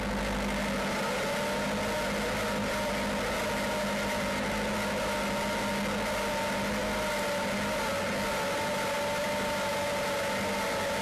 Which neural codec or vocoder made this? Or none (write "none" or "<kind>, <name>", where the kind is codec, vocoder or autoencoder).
none